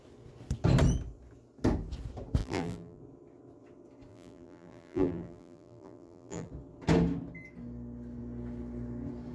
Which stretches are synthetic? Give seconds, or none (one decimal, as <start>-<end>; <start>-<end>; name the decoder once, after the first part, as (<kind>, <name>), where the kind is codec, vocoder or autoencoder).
2.4-3.0 (vocoder, BigVGAN v2); 4.1-6.5